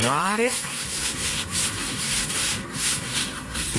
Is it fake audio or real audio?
fake